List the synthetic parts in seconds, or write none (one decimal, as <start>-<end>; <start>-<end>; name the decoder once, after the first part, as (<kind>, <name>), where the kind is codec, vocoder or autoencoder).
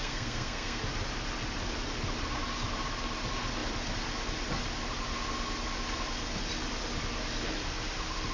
0.0-0.8 (codec, SNAC)